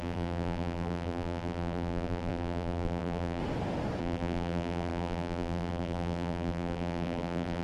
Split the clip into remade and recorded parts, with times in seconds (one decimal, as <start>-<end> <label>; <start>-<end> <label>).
0.0-3.4 remade; 3.4-4.0 recorded; 4.0-7.6 remade